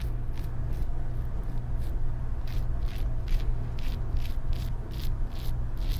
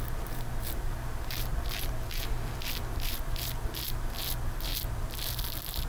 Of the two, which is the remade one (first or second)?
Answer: second